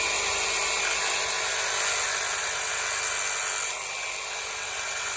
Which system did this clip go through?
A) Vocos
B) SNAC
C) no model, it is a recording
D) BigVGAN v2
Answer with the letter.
C